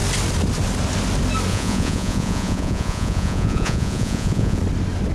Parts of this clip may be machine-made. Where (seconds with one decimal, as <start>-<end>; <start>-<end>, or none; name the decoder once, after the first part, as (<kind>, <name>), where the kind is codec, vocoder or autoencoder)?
1.5-4.6 (vocoder, Vocos)